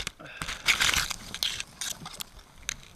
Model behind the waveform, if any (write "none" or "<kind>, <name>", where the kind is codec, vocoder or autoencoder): none